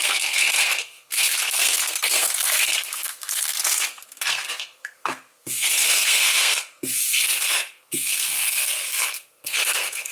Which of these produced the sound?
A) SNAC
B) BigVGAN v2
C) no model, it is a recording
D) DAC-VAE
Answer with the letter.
A